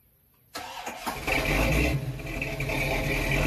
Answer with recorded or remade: recorded